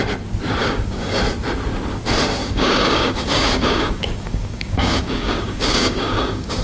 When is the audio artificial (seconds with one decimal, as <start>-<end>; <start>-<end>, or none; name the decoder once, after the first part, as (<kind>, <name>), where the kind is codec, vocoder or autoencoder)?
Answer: 0.6-1.2 (codec, DAC); 2.4-6.6